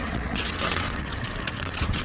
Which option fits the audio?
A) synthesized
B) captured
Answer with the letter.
A